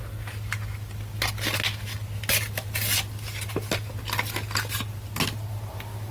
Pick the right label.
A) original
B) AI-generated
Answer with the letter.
A